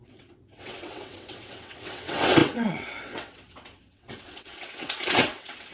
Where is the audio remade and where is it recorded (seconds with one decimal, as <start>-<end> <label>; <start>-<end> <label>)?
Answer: 0.0-5.7 remade